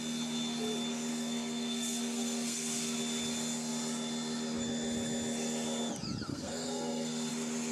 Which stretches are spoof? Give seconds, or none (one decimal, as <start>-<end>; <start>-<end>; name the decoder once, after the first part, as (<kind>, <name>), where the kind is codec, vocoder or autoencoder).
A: 1.1-3.0 (codec, SNAC); 6.3-7.3